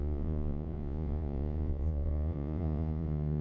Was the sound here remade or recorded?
remade